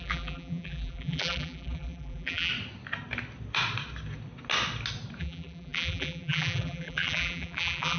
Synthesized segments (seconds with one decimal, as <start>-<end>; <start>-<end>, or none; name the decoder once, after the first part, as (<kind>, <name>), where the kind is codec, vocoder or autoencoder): 0.0-2.5 (vocoder, BigVGAN v2); 5.2-8.0